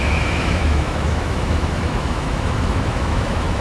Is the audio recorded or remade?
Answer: remade